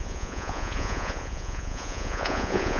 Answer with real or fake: fake